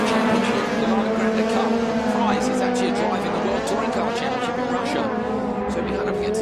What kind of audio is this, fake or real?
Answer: real